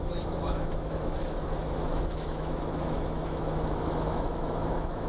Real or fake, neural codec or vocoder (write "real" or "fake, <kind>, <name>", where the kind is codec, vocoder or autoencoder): fake, autoencoder, DAC-VAE